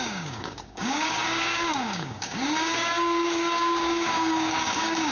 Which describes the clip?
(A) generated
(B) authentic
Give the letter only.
A